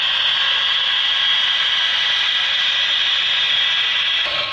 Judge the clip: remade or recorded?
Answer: recorded